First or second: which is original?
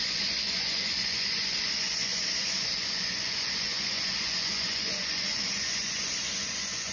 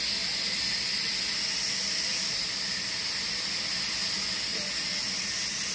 second